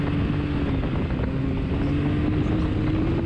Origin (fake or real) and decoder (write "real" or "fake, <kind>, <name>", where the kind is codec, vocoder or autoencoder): real